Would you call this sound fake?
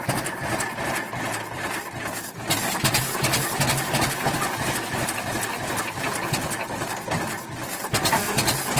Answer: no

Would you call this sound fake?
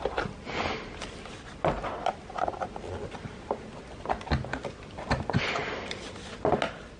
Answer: no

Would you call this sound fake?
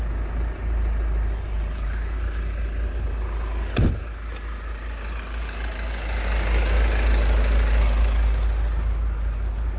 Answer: no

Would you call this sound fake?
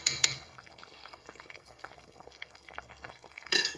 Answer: yes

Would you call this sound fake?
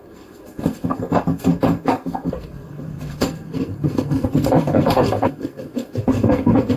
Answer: yes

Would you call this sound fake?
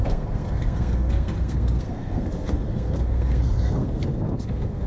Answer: yes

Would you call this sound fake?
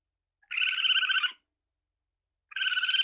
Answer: no